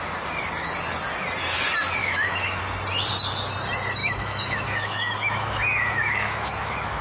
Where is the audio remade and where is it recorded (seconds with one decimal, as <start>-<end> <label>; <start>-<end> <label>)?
0.0-2.0 recorded; 2.0-2.6 remade; 2.6-4.0 recorded; 4.0-7.0 remade